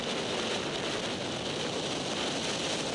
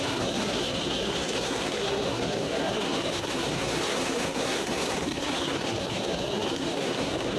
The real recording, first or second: first